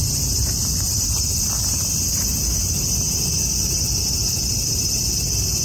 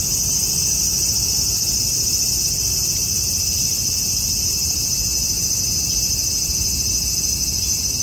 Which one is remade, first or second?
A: first